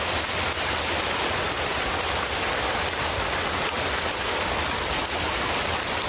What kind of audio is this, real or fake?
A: real